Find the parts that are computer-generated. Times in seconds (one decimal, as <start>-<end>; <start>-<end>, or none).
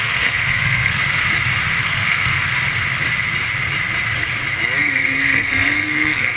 0.0-1.0; 1.8-2.5; 4.8-6.4